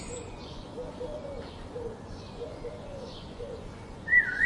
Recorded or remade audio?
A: remade